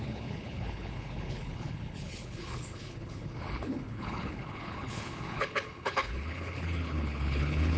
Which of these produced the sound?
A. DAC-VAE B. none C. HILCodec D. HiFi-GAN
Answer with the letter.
C